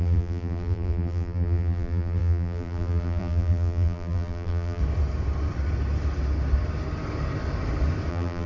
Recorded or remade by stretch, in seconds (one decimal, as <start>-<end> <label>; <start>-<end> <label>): 0.0-4.8 remade; 4.8-8.1 recorded; 8.1-8.5 remade